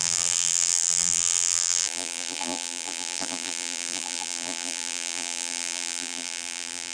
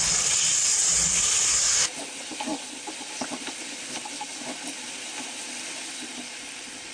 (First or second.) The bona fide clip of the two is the second